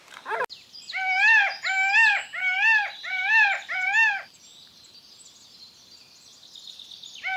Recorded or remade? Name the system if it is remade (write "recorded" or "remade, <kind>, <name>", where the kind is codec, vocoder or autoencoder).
recorded